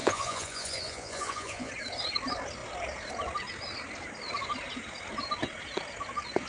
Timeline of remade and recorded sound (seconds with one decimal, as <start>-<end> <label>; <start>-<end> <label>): 0.0-1.7 remade; 1.7-6.5 recorded